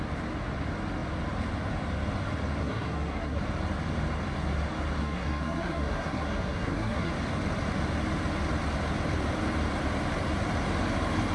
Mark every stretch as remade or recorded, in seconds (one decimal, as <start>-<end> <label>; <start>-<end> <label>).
0.0-2.6 recorded; 2.6-3.4 remade; 3.4-5.0 recorded; 5.0-7.1 remade; 7.1-11.3 recorded